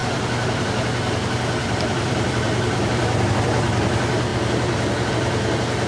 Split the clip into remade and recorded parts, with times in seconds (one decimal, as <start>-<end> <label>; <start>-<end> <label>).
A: 0.0-0.6 remade; 0.6-1.6 recorded; 1.6-3.3 remade; 3.3-5.9 recorded